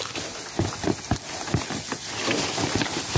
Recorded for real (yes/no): yes